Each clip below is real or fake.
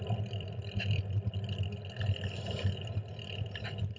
real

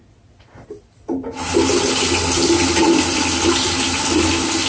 real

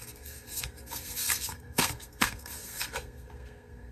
fake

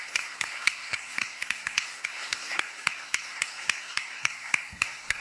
fake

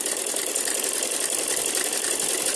fake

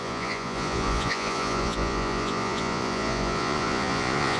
fake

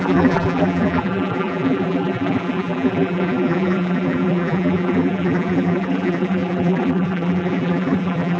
fake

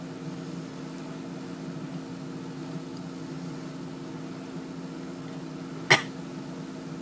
real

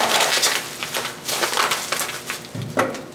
real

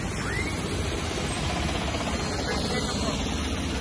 real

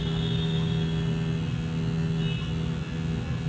real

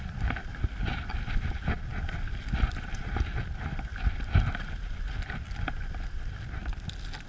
real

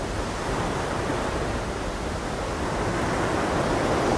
real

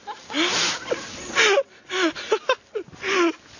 real